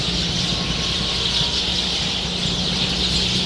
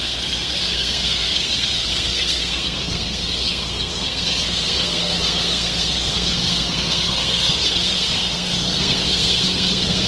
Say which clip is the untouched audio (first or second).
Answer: first